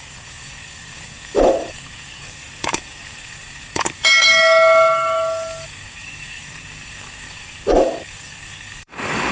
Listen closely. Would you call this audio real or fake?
fake